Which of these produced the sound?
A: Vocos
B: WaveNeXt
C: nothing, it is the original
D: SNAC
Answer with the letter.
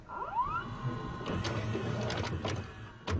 C